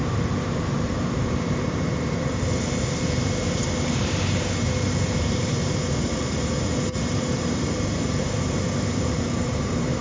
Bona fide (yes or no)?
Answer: no